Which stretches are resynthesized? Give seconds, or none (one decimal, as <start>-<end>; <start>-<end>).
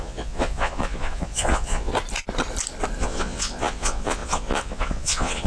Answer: 0.0-1.9; 3.0-5.5